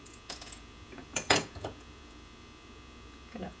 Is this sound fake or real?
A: fake